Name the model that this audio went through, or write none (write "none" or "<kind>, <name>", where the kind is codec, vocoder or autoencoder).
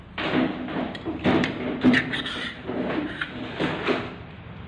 vocoder, BigVGAN v2